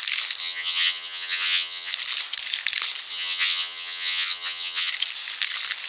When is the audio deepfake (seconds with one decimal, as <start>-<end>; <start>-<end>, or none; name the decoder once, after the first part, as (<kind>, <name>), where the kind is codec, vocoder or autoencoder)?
0.4-1.9 (vocoder, HiFi-GAN); 3.1-4.9